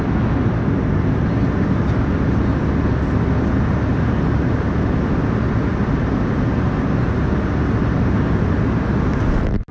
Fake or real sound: real